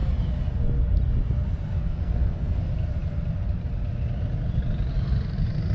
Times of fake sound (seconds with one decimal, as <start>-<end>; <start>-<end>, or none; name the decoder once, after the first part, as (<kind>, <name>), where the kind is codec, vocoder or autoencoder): 1.8-2.6 (codec, SNAC)